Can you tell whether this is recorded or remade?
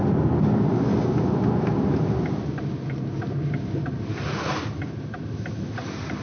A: recorded